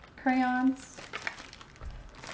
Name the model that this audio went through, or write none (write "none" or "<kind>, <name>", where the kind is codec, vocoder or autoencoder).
none